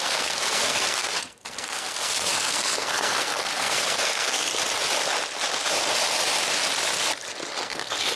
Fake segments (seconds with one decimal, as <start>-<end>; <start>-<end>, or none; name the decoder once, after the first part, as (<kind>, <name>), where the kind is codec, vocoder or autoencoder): 0.0-4.5 (codec, SNAC); 7.6-8.2

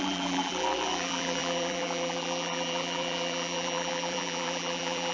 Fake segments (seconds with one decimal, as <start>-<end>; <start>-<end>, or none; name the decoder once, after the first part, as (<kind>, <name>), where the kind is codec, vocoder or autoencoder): 0.0-5.1 (vocoder, BigVGAN v2)

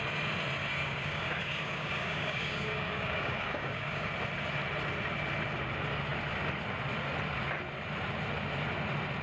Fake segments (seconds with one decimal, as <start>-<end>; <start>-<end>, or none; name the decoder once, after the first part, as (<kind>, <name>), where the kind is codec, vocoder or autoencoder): 0.7-4.1 (codec, DAC)